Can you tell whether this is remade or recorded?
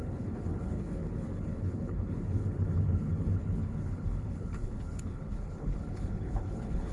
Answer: remade